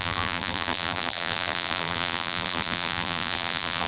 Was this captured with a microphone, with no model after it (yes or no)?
no